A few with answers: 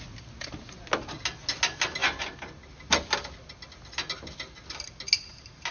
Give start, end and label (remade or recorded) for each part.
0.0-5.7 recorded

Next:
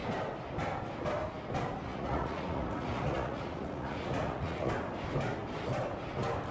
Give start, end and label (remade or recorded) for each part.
0.0-1.9 recorded; 1.9-4.7 remade; 4.7-6.5 recorded

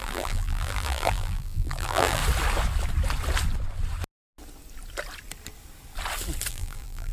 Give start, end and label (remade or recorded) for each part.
0.0-2.2 remade; 2.2-6.5 recorded; 6.5-7.1 remade